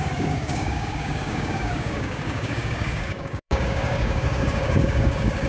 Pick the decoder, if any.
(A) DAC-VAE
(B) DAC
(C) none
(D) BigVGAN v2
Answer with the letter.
B